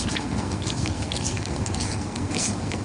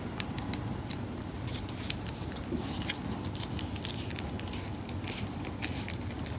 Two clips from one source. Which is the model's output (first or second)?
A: first